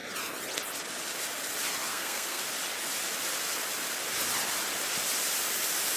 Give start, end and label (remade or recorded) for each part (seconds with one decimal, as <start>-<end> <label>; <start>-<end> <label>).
0.0-1.9 recorded; 1.9-2.4 remade; 2.4-6.0 recorded